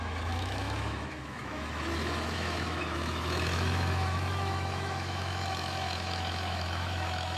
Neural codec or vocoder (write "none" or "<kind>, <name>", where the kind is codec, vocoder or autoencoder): autoencoder, DAC-VAE